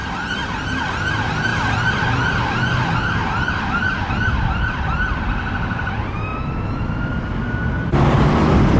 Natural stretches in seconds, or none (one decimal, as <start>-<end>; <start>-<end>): 0.0-1.5; 5.3-8.8